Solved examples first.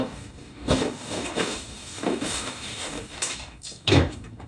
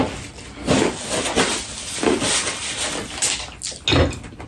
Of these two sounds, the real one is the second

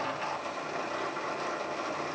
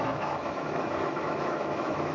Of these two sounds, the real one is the first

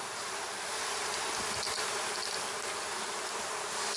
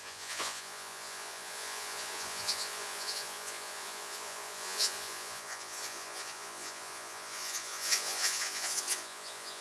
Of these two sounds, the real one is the first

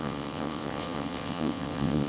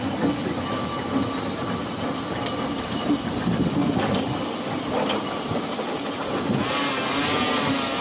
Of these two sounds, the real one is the second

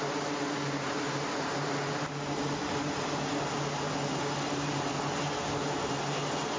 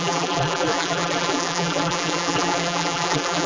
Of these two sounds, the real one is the first